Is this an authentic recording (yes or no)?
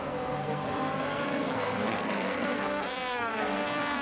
no